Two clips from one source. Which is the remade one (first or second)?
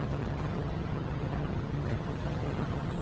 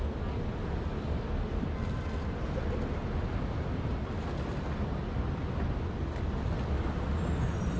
first